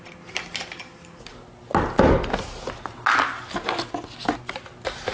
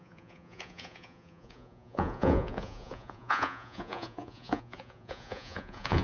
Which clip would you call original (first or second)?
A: first